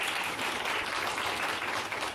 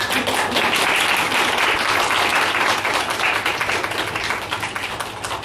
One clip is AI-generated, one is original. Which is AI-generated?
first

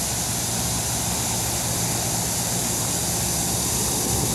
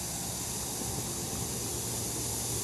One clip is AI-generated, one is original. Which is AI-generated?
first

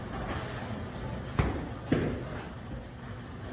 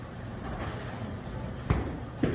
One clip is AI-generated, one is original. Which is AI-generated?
second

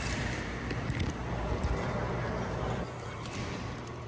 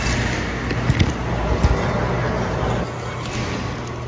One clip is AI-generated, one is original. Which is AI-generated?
first